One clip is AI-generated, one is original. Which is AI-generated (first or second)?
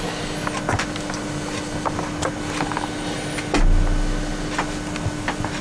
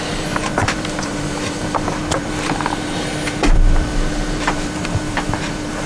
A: second